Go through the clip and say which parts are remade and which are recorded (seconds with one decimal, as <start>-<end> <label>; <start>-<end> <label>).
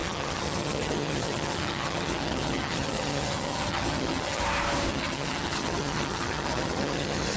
0.0-4.4 remade; 4.4-4.9 recorded; 4.9-7.4 remade